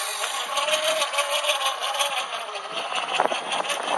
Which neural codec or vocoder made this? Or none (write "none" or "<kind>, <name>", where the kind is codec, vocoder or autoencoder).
none